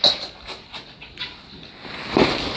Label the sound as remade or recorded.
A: recorded